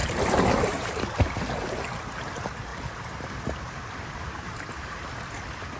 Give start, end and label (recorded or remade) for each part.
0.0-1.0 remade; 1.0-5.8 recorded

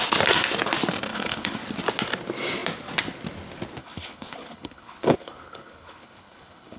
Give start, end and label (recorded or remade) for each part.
0.0-1.1 recorded; 1.1-1.6 remade; 1.6-3.8 recorded; 3.8-6.8 remade